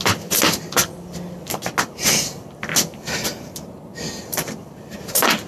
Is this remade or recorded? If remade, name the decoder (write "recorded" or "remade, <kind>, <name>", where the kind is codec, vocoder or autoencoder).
recorded